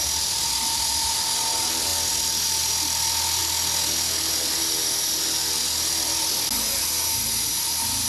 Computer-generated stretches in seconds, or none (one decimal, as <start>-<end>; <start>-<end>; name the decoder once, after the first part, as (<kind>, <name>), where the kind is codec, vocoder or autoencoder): none